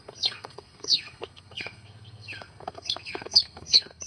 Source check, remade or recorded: remade